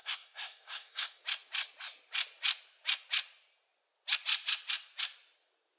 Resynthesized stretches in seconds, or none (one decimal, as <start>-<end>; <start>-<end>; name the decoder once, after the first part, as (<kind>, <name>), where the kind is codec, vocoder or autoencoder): 0.0-1.2 (codec, SNAC)